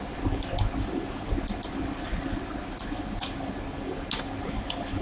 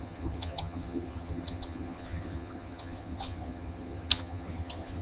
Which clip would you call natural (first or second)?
first